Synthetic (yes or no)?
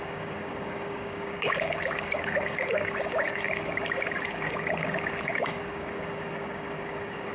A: yes